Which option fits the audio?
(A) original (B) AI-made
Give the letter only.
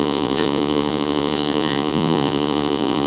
B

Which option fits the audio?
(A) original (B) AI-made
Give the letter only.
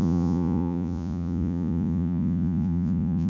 B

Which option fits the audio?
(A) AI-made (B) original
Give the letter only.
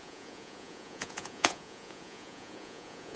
A